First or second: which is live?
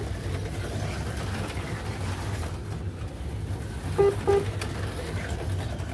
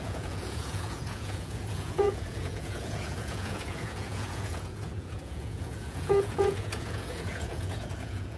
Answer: first